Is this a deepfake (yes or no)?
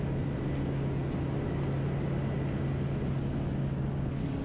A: no